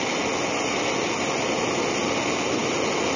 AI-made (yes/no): no